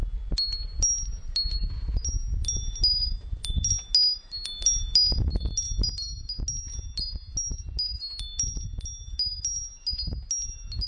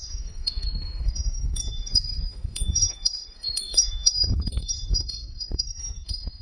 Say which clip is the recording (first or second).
first